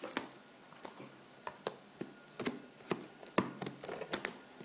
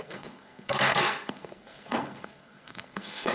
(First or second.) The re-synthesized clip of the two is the second